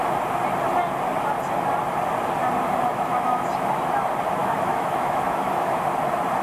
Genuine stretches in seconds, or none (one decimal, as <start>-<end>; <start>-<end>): 0.0-2.9; 3.4-4.4; 5.7-6.4